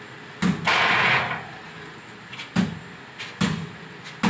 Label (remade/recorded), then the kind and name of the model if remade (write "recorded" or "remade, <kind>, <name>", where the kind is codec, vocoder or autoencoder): recorded